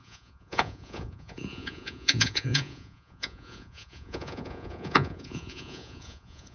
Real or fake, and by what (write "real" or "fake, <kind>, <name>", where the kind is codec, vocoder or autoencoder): fake, vocoder, Vocos